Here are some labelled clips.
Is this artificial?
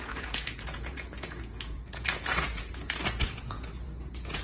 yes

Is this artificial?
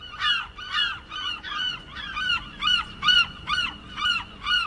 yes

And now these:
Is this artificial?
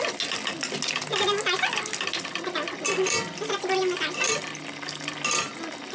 no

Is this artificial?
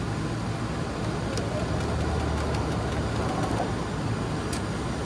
no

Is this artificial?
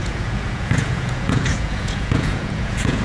yes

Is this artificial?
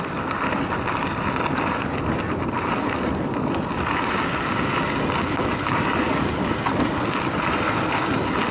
no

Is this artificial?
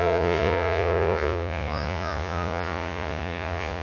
yes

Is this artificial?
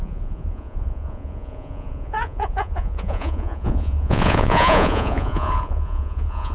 yes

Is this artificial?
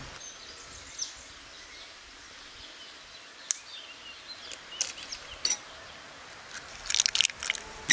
no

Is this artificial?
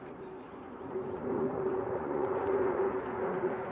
yes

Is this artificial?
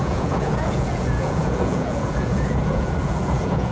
yes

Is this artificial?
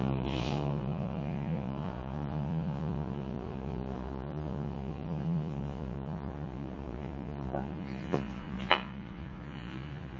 yes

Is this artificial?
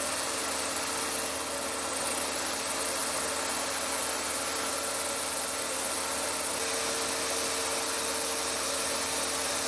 no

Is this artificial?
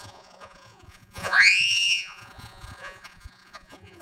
yes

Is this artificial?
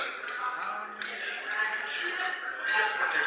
no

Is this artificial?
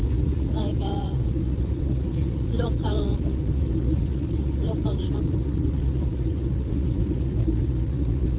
yes